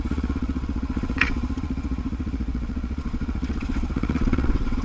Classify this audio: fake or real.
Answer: fake